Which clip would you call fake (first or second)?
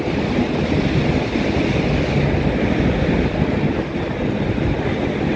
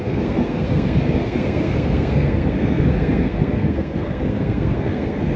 second